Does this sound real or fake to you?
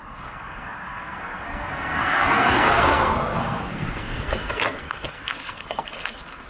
fake